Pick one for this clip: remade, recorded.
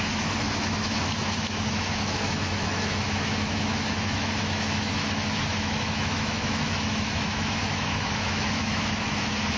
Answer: remade